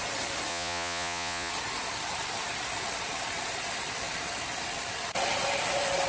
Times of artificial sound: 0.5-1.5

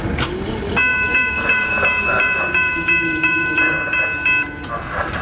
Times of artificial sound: 0.9-4.0

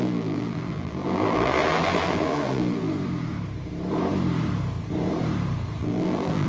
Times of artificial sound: 0.0-2.9; 5.8-6.5

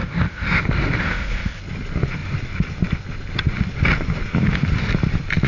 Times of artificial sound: 0.0-0.6; 1.0-1.6

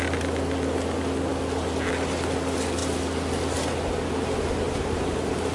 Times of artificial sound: none

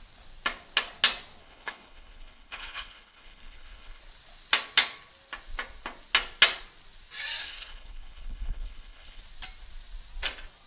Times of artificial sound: 1.4-4.0; 7.4-9.2